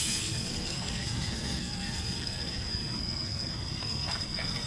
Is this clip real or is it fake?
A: fake